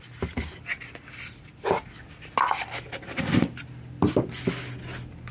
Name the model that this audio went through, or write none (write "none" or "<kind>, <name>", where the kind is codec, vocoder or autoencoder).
none